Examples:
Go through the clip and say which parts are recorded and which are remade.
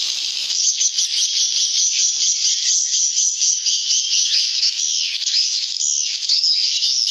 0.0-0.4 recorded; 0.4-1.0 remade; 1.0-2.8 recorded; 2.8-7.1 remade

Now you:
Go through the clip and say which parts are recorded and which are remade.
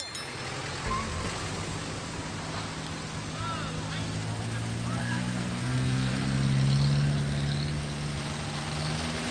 0.0-5.0 recorded; 5.0-6.1 remade; 6.1-9.3 recorded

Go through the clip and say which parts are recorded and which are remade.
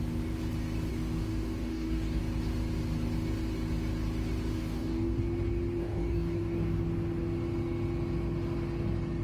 0.0-0.9 recorded; 0.9-2.2 remade; 2.2-4.5 recorded; 4.5-5.2 remade; 5.2-5.8 recorded; 5.8-6.8 remade; 6.8-9.2 recorded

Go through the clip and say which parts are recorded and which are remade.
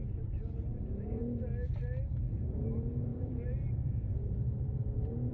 0.0-1.2 remade; 1.2-2.5 recorded; 2.5-5.3 remade